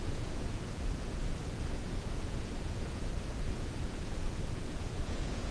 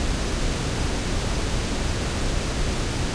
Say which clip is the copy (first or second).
first